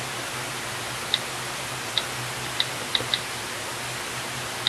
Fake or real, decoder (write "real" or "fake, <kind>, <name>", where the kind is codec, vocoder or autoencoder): real